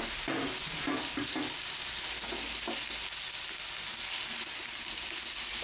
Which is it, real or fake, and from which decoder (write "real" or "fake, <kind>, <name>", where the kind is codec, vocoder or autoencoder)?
real